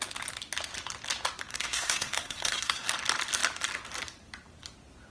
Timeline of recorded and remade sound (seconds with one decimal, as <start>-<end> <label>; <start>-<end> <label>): 0.0-1.5 recorded; 1.5-2.9 remade; 2.9-5.1 recorded